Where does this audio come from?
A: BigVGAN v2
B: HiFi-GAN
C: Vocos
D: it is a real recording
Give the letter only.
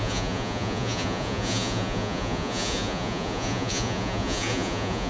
C